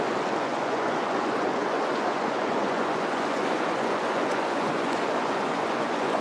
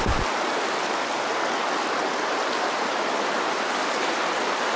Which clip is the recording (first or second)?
second